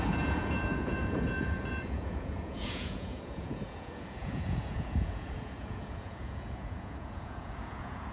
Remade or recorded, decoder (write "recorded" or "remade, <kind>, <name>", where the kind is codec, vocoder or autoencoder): remade, vocoder, Vocos